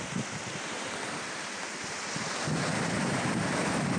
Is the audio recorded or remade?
recorded